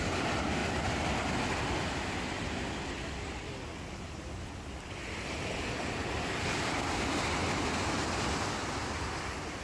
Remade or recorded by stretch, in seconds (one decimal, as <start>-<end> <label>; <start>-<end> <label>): 0.0-0.6 remade; 0.6-5.6 recorded; 5.6-7.4 remade; 7.4-8.4 recorded; 8.4-9.6 remade